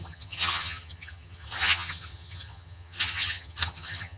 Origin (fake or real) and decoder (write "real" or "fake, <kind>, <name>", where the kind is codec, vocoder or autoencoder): fake, vocoder, HiFi-GAN